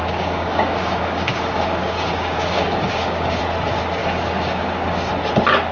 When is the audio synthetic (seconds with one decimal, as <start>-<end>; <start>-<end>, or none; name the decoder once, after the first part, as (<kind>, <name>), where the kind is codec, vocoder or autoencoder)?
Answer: 0.0-3.4 (codec, DAC); 4.0-5.1